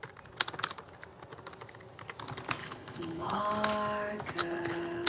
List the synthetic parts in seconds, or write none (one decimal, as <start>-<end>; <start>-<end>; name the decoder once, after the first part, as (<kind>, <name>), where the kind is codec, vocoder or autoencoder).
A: 2.6-3.4 (codec, HILCodec); 4.4-5.1